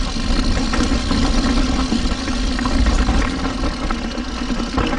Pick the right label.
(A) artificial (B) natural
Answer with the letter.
B